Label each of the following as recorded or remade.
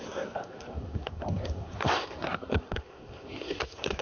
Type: remade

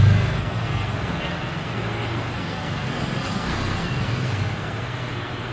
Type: remade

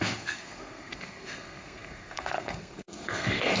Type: remade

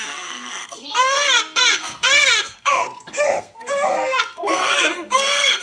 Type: remade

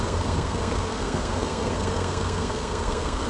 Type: remade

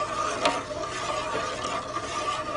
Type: recorded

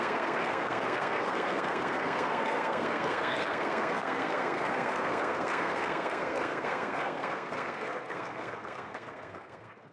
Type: remade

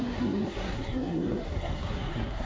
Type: remade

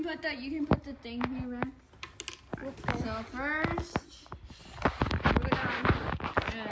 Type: recorded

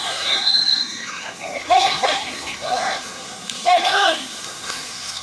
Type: remade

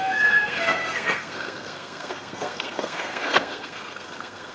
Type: remade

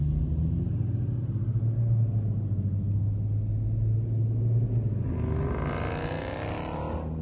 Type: recorded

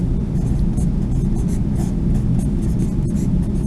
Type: recorded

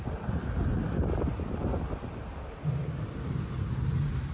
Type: recorded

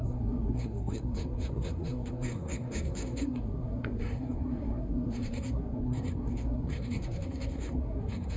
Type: remade